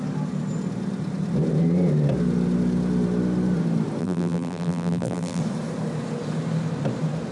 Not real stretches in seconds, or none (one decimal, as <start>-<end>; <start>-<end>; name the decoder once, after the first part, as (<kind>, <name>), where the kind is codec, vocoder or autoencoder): 4.0-5.4 (vocoder, BigVGAN v2)